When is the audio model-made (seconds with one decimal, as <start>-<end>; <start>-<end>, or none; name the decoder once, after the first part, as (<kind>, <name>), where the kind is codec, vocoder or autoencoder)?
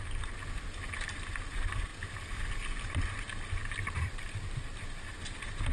none